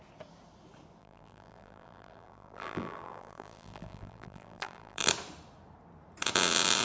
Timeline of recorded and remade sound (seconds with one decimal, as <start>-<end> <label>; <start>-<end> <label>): 0.0-1.0 recorded; 1.0-5.1 remade; 5.1-6.8 recorded